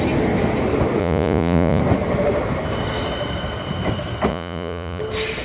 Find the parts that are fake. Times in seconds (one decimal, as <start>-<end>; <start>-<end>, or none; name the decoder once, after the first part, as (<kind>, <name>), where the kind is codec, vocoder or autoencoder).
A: 1.0-1.8 (vocoder, Vocos); 4.3-5.0